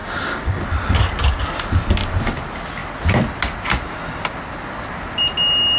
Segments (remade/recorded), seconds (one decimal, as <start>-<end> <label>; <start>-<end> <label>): 0.0-0.6 remade; 0.6-5.8 recorded

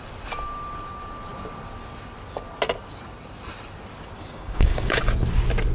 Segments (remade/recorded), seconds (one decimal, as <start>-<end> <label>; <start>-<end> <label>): 0.0-4.2 recorded; 4.2-5.0 remade; 5.0-5.7 recorded

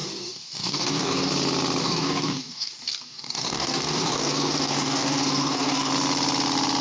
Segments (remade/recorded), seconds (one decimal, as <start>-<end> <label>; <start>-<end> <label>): 0.0-1.3 remade; 1.3-1.8 recorded; 1.8-5.9 remade; 5.9-6.8 recorded

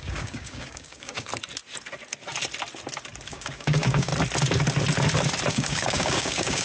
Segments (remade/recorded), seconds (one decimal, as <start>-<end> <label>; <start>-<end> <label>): 0.0-1.3 remade; 1.3-3.3 recorded; 3.3-4.1 remade; 4.1-5.5 recorded; 5.5-6.6 remade

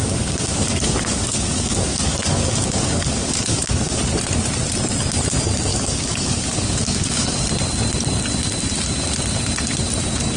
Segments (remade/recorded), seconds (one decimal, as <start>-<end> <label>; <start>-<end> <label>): 0.0-4.0 remade; 4.0-5.7 recorded; 5.7-7.5 remade; 7.5-10.4 recorded

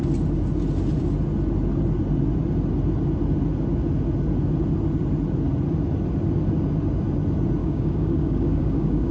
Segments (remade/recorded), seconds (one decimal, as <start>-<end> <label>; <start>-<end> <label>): 0.0-7.6 recorded; 7.6-9.1 remade

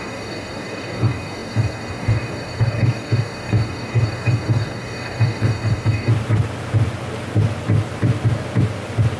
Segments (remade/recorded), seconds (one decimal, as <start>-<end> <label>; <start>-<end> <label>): 0.0-6.1 remade; 6.1-9.2 recorded

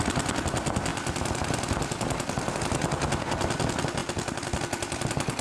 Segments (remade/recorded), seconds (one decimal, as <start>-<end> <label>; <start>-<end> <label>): 0.0-5.4 recorded